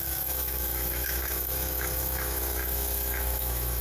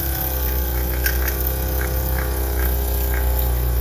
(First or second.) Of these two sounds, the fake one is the first